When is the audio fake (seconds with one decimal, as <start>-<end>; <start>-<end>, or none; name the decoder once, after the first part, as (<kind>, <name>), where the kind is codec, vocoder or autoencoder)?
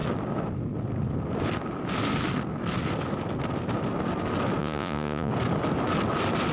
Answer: 4.6-5.3 (vocoder, Vocos)